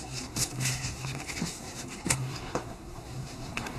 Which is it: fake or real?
fake